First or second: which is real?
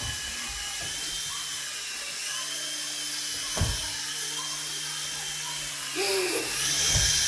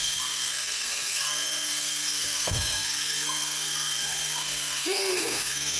first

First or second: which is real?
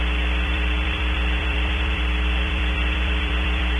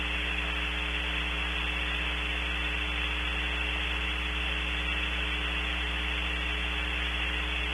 second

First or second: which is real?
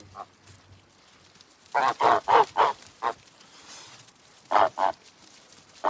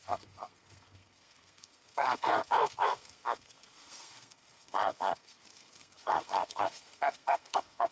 first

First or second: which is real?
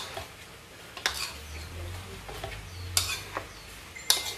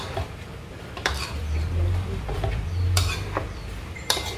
first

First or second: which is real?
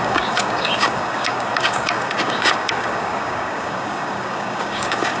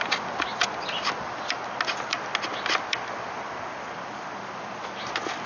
second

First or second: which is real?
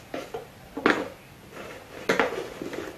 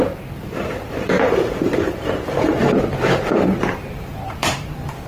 first